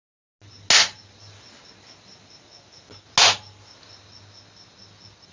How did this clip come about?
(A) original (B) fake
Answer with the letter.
A